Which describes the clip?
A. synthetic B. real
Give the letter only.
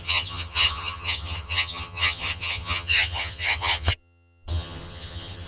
A